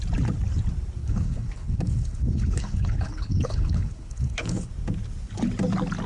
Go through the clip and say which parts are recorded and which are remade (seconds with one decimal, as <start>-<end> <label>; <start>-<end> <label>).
0.0-1.0 recorded; 1.0-4.7 remade; 4.7-6.1 recorded